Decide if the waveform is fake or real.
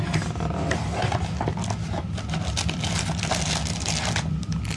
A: real